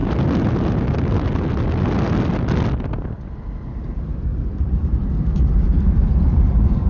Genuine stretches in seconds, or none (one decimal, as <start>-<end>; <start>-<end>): 0.0-3.3